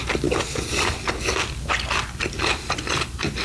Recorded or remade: recorded